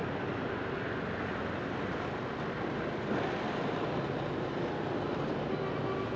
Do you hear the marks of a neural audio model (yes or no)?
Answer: no